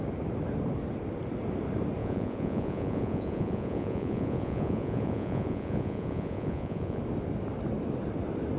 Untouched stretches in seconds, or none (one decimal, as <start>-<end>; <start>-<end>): 0.0-2.0; 7.0-8.6